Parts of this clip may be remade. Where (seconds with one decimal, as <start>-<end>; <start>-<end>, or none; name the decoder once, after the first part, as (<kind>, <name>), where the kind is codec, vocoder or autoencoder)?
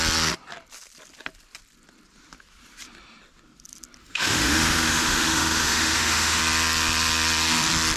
4.0-6.4 (autoencoder, DAC-VAE)